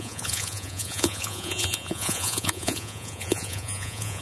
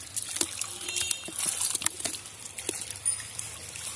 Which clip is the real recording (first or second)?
second